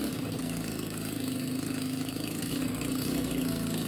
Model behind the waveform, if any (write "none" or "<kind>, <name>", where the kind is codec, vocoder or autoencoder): codec, SNAC